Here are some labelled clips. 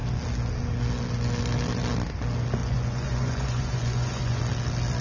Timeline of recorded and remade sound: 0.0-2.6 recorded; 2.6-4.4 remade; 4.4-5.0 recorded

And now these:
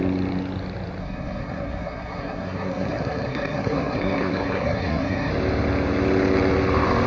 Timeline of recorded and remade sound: 0.0-1.0 recorded; 1.0-5.3 remade; 5.3-7.1 recorded

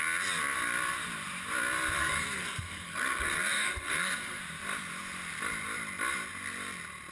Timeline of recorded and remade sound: 0.0-2.0 recorded; 2.0-4.4 remade; 4.4-7.1 recorded

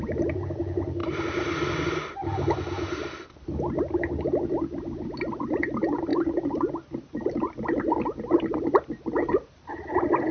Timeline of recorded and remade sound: 0.0-10.3 recorded

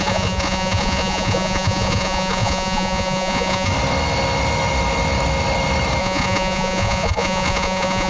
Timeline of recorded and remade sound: 0.0-3.7 remade; 3.7-6.0 recorded; 6.0-8.1 remade

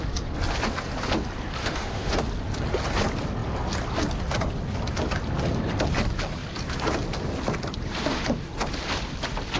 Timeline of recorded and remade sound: 0.0-1.6 recorded; 1.6-2.2 remade; 2.2-9.6 recorded

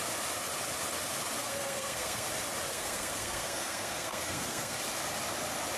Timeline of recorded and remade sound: 0.0-1.4 recorded; 1.4-2.3 remade; 2.3-2.7 recorded; 2.7-4.8 remade; 4.8-5.8 recorded